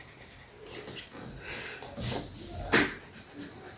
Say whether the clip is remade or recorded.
recorded